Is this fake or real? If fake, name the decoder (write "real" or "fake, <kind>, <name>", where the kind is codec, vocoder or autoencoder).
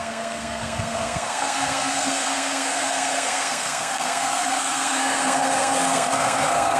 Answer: fake, codec, SNAC